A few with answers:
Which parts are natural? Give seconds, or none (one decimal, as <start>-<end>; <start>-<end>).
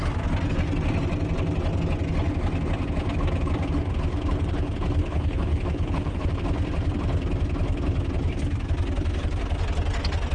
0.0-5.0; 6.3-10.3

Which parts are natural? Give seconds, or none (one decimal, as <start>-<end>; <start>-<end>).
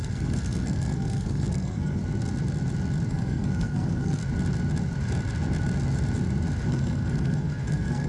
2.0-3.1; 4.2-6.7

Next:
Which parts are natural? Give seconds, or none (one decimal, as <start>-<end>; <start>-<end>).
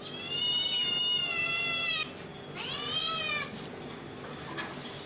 0.0-5.1